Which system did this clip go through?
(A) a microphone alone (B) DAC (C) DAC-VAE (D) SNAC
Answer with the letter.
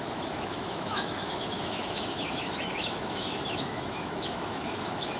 C